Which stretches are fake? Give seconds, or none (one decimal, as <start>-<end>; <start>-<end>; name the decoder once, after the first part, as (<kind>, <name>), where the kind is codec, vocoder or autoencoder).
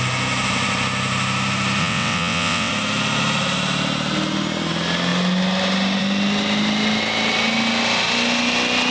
1.8-2.7 (vocoder, WaveNeXt)